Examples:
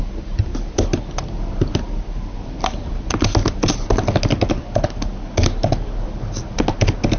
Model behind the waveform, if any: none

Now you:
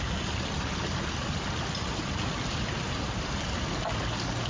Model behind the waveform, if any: none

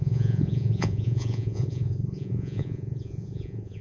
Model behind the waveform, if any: vocoder, Vocos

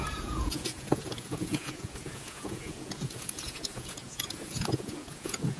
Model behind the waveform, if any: vocoder, Vocos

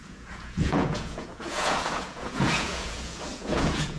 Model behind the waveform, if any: vocoder, Vocos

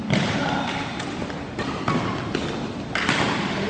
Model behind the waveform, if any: none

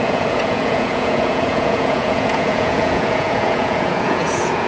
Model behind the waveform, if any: vocoder, Vocos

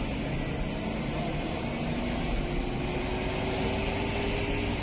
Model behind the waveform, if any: none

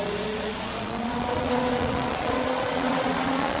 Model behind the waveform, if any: vocoder, Vocos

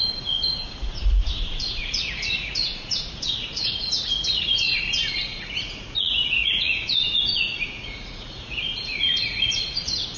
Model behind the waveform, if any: vocoder, Vocos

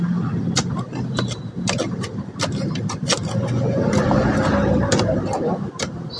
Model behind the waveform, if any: none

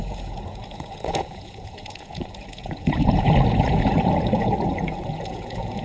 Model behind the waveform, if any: vocoder, Vocos